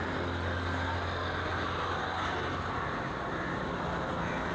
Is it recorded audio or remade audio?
recorded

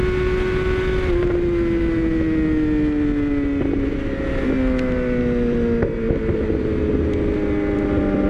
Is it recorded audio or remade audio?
recorded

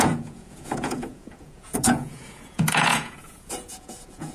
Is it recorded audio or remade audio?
remade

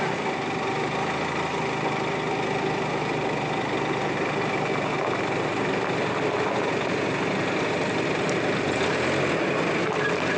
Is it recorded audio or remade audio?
recorded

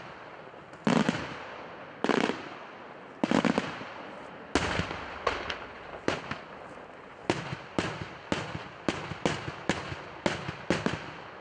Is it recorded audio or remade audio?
recorded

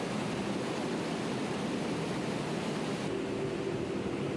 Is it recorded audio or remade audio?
recorded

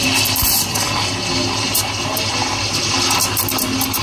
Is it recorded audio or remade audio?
recorded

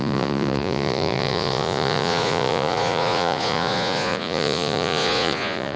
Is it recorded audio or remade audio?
remade